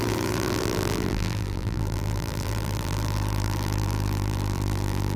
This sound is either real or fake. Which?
fake